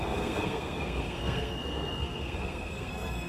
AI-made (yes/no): yes